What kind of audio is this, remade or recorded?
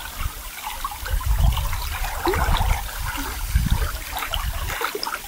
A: recorded